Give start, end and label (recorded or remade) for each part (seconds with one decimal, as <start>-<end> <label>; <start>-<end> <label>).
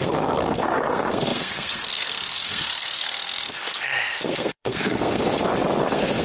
0.0-5.3 remade; 5.3-5.8 recorded; 5.8-6.2 remade